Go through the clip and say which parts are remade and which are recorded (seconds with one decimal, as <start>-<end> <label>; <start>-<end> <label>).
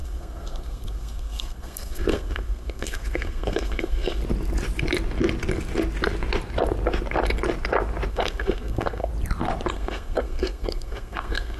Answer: 0.0-4.2 remade; 4.2-8.1 recorded; 8.1-9.1 remade; 9.1-9.7 recorded; 9.7-11.6 remade